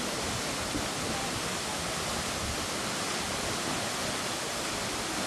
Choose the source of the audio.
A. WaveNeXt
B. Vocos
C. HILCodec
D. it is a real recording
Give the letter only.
D